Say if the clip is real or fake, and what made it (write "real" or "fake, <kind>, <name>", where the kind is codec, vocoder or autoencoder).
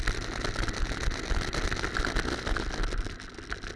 real